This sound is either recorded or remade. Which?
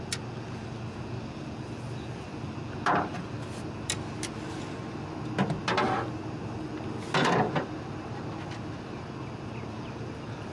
recorded